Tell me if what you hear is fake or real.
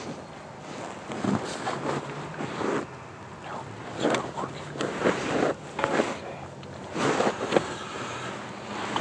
real